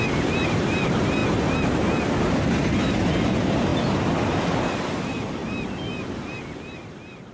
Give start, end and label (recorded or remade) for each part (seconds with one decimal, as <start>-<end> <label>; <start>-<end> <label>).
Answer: 0.0-1.2 remade; 1.2-2.3 recorded; 2.3-7.3 remade